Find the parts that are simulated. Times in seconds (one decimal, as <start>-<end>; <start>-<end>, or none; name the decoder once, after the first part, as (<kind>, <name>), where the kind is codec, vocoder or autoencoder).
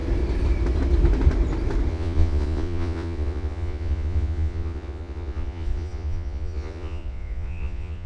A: 1.9-8.1 (vocoder, Vocos)